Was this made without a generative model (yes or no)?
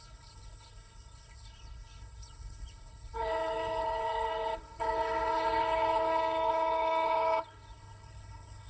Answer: no